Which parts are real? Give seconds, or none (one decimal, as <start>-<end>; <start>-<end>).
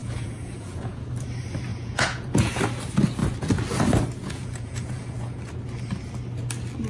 1.1-1.7; 2.6-4.2; 5.4-6.9